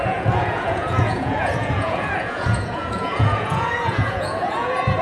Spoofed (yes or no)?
yes